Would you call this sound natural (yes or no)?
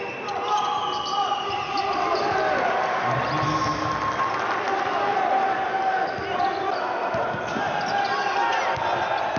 yes